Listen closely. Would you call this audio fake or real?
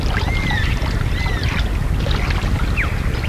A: real